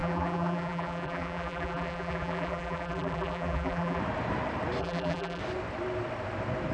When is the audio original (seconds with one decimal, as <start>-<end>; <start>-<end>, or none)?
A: 4.0-4.8; 5.4-6.7